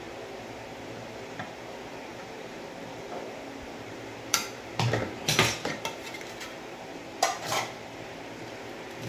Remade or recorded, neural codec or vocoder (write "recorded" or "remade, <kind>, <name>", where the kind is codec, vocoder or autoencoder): remade, vocoder, BigVGAN v2